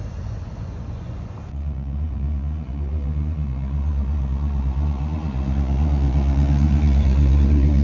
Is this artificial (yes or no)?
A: yes